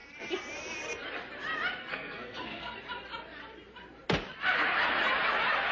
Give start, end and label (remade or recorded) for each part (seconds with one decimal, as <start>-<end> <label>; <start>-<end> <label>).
0.0-1.8 recorded; 1.8-2.8 remade; 2.8-5.7 recorded